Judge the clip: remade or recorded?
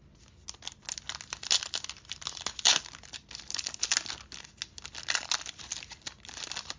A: recorded